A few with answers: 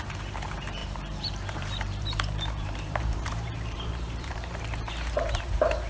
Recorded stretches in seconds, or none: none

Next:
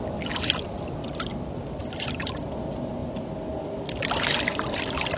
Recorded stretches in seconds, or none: 0.0-1.8; 2.4-5.2

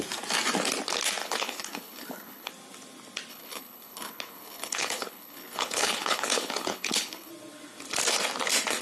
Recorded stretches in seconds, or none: 0.0-1.2; 2.5-3.3; 7.3-8.8

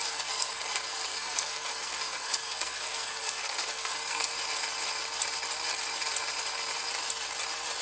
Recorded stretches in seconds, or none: 4.3-7.8

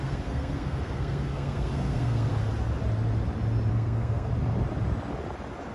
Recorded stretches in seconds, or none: 2.3-3.7; 4.3-5.7

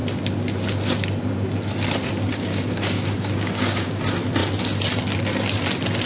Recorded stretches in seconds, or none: 0.0-2.3; 4.0-6.1

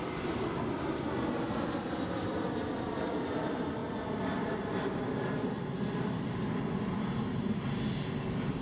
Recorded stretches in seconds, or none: 0.0-8.6